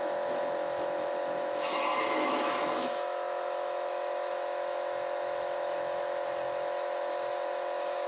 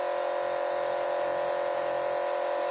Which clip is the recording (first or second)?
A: second